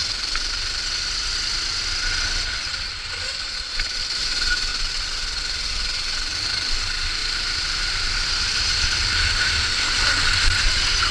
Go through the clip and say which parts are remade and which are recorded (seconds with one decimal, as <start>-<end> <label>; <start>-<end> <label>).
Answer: 0.0-1.3 remade; 1.3-2.9 recorded; 2.9-3.8 remade; 3.8-7.2 recorded; 7.2-9.0 remade; 9.0-11.1 recorded